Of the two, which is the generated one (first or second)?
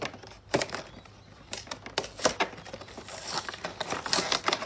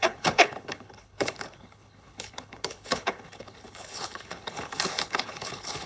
second